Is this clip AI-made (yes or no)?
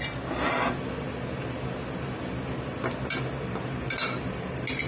no